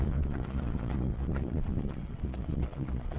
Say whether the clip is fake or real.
fake